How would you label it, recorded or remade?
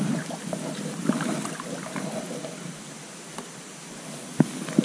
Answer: remade